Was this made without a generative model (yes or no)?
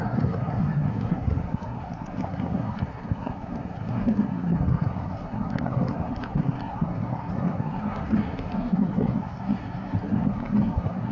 no